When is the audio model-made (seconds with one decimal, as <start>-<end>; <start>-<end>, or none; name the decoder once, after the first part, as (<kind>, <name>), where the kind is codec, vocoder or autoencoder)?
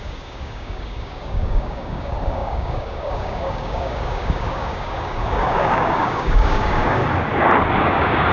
0.0-7.0 (codec, DAC); 7.8-8.3